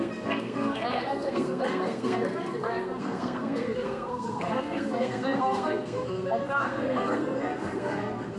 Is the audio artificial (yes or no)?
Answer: yes